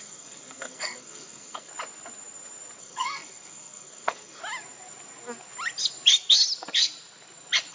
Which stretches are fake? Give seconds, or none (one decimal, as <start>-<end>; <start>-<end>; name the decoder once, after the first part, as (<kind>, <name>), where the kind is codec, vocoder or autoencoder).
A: 0.0-1.7 (codec, SNAC); 2.8-4.4